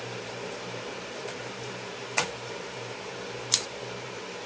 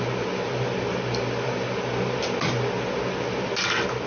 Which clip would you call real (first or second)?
second